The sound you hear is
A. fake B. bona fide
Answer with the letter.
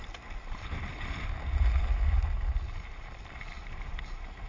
B